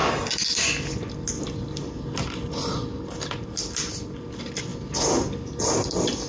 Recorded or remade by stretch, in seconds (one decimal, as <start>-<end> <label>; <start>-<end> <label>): 0.0-6.3 recorded